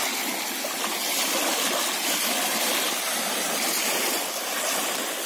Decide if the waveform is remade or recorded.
recorded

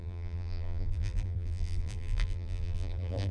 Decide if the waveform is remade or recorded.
remade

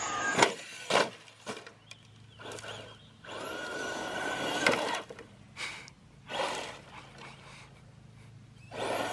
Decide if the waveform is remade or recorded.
recorded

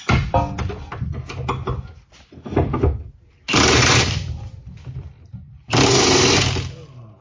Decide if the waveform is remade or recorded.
recorded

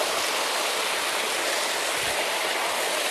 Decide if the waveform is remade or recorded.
recorded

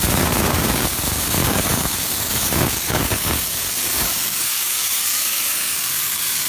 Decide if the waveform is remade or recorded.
remade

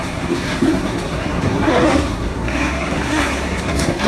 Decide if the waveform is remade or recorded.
remade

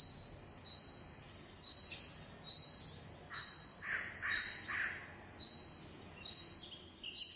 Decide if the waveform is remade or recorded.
recorded